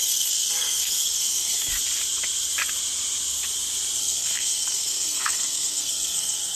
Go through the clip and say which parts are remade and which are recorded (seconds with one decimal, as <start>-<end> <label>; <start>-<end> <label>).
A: 0.0-1.7 remade; 1.7-4.0 recorded; 4.0-6.6 remade